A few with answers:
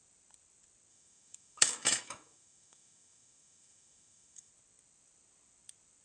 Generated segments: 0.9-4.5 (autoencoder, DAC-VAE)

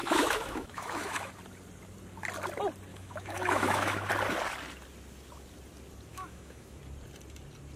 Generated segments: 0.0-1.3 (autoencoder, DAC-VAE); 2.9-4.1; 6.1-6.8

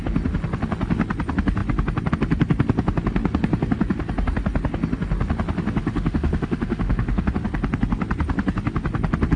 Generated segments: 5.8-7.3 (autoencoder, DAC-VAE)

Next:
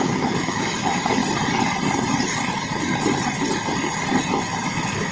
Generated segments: 0.0-1.2 (autoencoder, DAC-VAE); 4.3-5.1

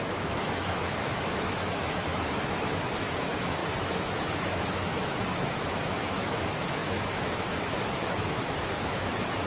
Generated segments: 0.0-9.5 (autoencoder, DAC-VAE)

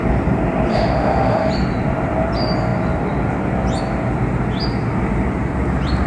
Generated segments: 0.7-1.5 (autoencoder, DAC-VAE)